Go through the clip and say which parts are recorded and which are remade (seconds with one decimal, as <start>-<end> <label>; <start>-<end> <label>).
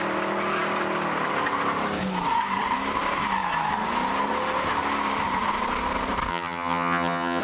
0.0-6.3 recorded; 6.3-7.4 remade